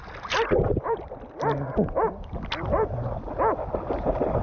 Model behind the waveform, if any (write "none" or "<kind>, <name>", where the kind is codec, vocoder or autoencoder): none